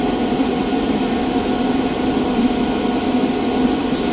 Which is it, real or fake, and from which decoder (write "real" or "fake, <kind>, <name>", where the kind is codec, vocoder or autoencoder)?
fake, vocoder, BigVGAN v2